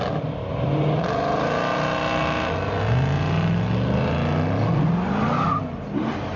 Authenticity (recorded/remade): recorded